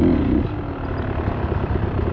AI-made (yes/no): no